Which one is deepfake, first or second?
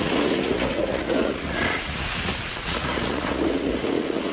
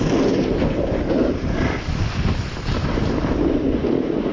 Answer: first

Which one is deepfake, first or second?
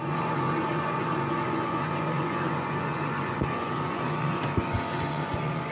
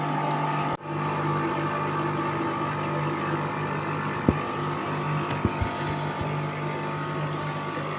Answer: first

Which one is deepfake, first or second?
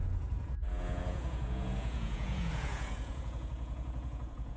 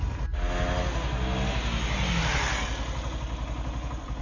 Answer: first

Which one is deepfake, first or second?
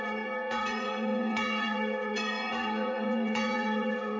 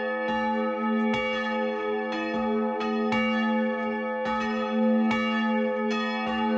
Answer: first